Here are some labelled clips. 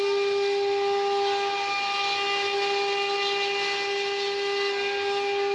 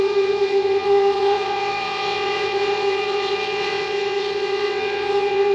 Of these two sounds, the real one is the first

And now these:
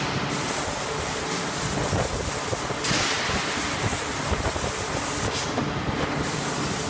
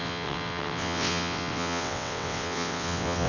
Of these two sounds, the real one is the first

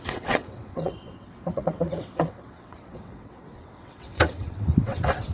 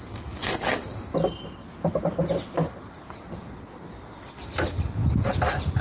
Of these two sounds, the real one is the second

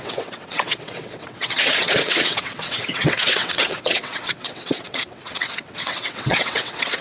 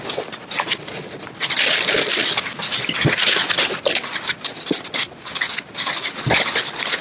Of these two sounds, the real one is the second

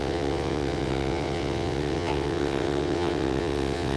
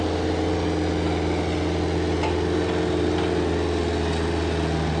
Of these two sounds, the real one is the second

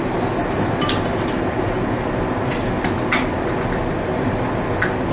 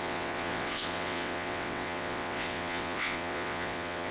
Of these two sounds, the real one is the first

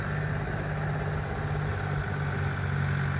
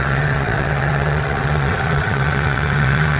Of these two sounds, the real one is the first